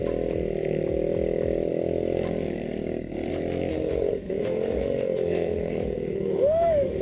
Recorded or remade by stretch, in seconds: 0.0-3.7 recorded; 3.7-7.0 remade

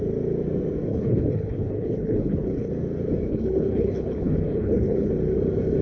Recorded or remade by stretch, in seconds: 0.0-0.9 recorded; 0.9-2.7 remade; 2.7-3.3 recorded; 3.3-5.1 remade; 5.1-5.8 recorded

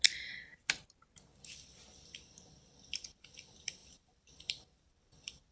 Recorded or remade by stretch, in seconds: 0.0-0.5 recorded; 0.5-1.4 remade; 1.4-3.8 recorded; 3.8-4.9 remade; 4.9-5.5 recorded

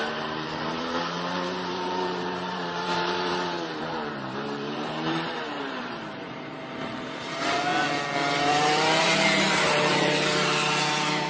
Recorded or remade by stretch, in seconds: 0.0-7.7 remade; 7.7-8.5 recorded; 8.5-11.3 remade

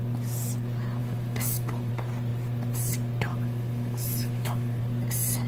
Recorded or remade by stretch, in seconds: 0.0-1.0 recorded; 1.0-1.9 remade; 1.9-3.3 recorded; 3.3-4.8 remade; 4.8-5.5 recorded

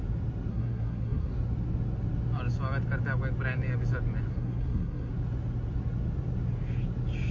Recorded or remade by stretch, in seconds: 0.0-0.5 recorded; 0.5-1.3 remade; 1.3-4.3 recorded; 4.3-5.1 remade; 5.1-7.3 recorded

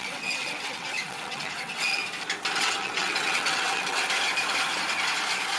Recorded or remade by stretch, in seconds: 0.0-2.0 remade; 2.0-2.6 recorded; 2.6-4.0 remade; 4.0-5.6 recorded